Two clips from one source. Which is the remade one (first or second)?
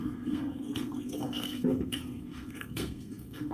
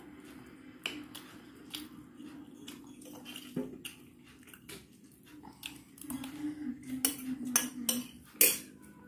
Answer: first